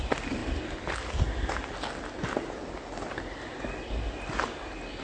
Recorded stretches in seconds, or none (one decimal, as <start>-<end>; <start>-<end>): 0.0-5.0